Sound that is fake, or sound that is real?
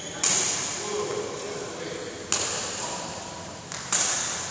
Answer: real